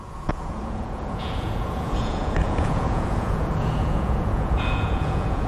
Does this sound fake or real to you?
fake